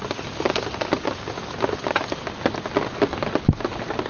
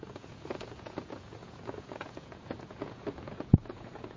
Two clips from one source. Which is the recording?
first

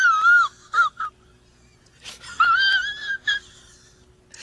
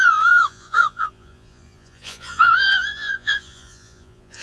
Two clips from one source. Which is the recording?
first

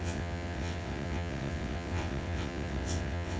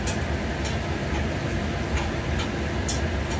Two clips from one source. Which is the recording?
second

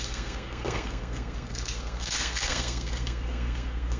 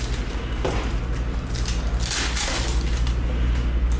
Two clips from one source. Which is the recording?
second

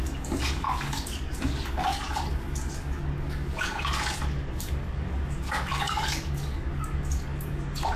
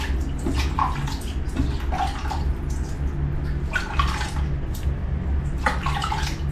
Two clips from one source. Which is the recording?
second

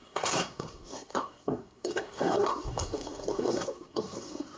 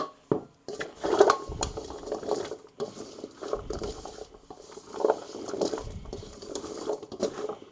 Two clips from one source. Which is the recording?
second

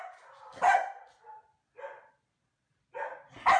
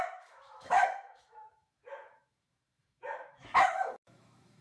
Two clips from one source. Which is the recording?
first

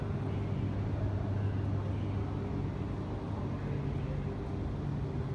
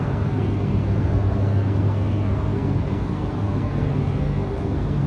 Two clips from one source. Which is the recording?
first